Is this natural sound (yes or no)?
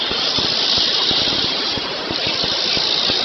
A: yes